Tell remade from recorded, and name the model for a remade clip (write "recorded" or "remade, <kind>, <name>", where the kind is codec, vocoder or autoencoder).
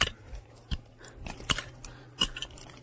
remade, vocoder, BigVGAN v2